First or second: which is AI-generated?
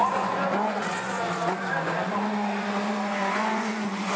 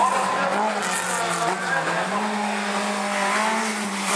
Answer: first